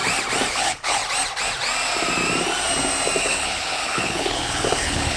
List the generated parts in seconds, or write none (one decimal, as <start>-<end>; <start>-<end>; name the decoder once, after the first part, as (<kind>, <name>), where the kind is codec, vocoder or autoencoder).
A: 0.5-1.0 (codec, HILCodec); 3.2-5.2